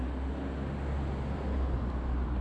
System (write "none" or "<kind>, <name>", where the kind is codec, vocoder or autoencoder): none